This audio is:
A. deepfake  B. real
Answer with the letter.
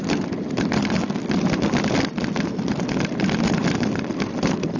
B